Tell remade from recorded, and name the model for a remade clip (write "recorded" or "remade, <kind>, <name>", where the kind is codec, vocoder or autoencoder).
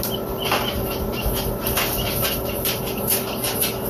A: recorded